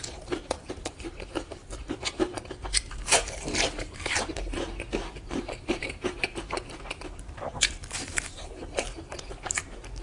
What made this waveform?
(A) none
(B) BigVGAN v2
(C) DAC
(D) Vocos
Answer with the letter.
B